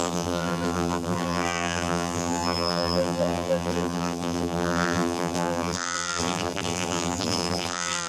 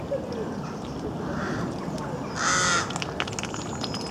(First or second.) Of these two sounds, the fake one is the first